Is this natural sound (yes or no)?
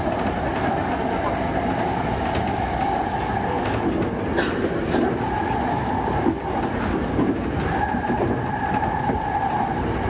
yes